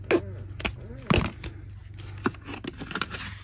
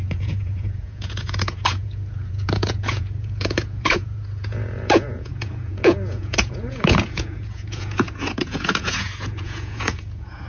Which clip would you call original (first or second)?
first